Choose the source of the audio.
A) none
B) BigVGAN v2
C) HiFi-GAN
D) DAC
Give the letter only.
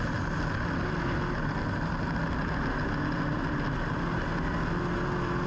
A